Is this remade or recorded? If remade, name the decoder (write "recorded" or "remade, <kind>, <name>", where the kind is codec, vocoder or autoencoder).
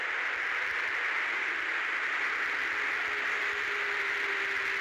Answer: recorded